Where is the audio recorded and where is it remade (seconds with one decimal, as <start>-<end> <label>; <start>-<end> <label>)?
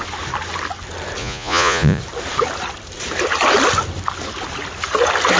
0.0-1.2 recorded; 1.2-2.0 remade; 2.0-5.4 recorded